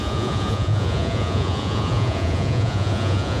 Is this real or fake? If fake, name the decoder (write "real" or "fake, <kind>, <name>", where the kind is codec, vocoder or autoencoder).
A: fake, vocoder, Vocos